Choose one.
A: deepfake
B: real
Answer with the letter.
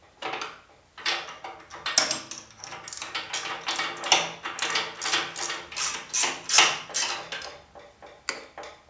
B